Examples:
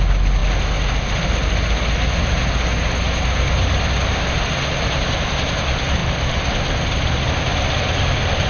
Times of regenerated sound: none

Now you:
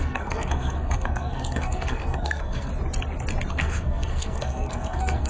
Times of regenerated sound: 0.0-2.7 (codec, SNAC); 3.5-5.3

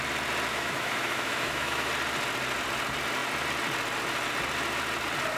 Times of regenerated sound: 0.5-1.9 (autoencoder, DAC-VAE)

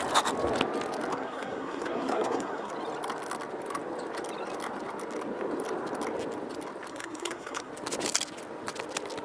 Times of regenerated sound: 1.1-2.7 (codec, SNAC); 6.9-7.7

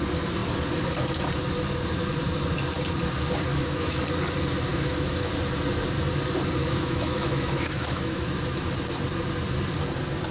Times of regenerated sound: 3.5-4.0 (autoencoder, DAC-VAE); 4.7-5.3; 6.6-8.7